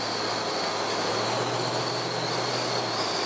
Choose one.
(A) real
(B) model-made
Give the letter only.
A